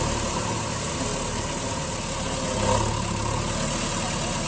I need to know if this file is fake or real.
real